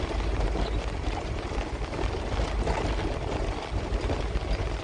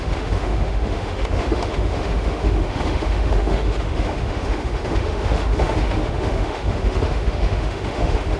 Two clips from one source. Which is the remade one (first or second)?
second